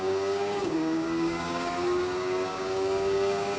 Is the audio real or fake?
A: fake